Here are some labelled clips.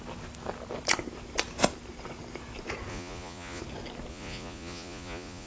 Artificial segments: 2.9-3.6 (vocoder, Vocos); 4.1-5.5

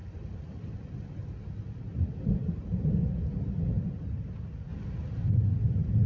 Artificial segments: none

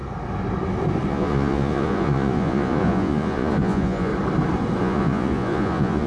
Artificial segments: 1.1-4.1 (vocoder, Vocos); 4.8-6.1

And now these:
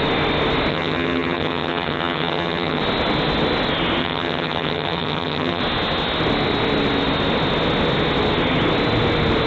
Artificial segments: 0.7-2.8 (vocoder, HiFi-GAN); 4.0-5.6

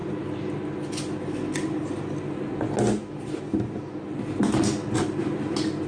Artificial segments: none